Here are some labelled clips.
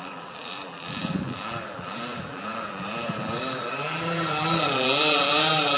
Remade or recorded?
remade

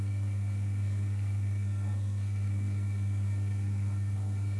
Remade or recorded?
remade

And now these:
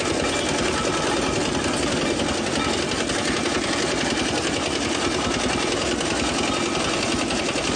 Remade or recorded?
recorded